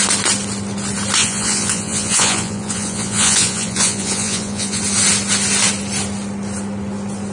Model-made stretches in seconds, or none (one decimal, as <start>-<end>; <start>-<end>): 1.2-4.8